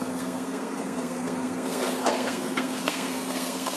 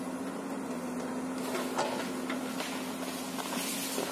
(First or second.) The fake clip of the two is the first